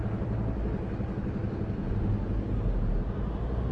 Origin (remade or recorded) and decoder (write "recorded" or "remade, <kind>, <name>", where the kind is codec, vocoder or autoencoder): recorded